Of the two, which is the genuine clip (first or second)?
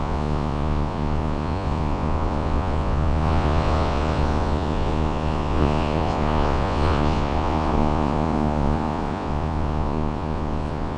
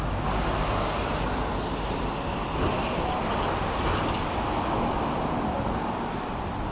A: second